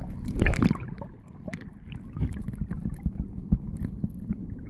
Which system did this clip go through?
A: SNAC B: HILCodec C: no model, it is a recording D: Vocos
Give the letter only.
C